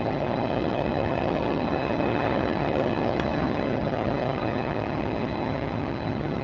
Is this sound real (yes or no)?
no